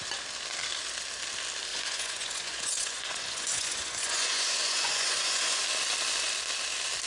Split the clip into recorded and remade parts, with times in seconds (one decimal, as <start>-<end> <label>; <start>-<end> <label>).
0.0-1.7 recorded; 1.7-5.6 remade; 5.6-7.1 recorded